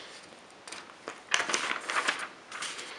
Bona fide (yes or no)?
yes